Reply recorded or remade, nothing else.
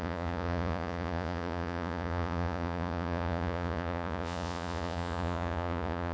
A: remade